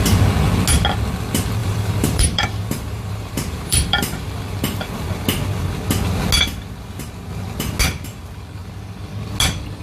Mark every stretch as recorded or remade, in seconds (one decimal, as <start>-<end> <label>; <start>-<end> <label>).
0.0-1.6 recorded; 1.6-4.4 remade; 4.4-9.8 recorded